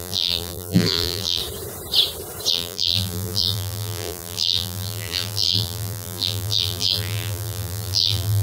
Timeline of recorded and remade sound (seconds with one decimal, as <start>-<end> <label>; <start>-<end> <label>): 0.0-1.4 remade; 1.4-2.5 recorded; 2.5-8.4 remade